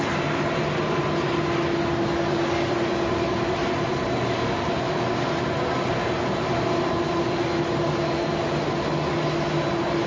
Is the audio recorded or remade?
recorded